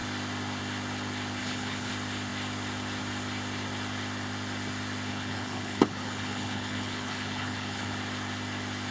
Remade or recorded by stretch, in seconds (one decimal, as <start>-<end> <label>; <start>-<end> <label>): 0.0-1.4 recorded; 1.4-1.9 remade; 1.9-5.1 recorded; 5.1-8.0 remade; 8.0-8.9 recorded